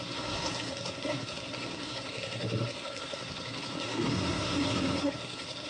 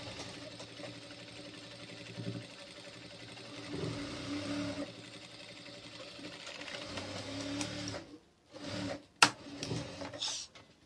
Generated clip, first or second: first